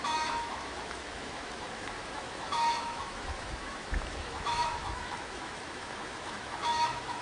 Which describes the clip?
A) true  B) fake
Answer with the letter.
B